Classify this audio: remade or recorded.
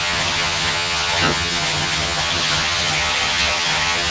remade